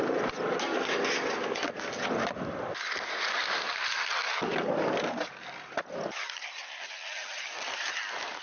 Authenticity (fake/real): real